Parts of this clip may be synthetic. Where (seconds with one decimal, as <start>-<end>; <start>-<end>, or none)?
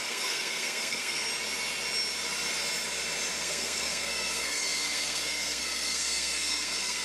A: 0.0-1.3; 3.3-7.0